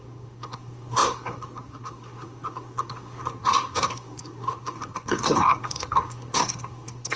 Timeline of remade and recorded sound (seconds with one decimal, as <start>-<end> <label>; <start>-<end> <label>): 0.0-7.2 remade